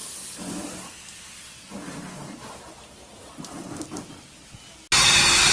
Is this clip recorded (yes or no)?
yes